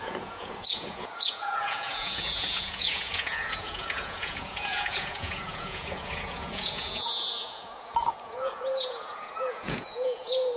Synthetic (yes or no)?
yes